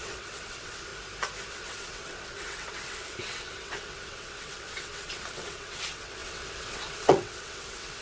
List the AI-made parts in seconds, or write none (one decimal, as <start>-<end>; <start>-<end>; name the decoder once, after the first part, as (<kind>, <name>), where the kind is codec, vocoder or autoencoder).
0.0-0.9 (vocoder, WaveNeXt); 1.5-8.0